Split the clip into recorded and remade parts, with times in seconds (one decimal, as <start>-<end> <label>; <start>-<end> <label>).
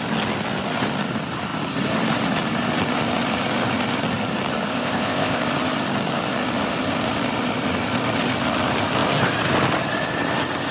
0.0-4.7 recorded; 4.7-5.4 remade; 5.4-10.7 recorded